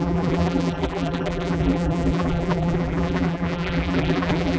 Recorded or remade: remade